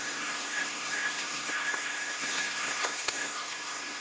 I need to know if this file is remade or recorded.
remade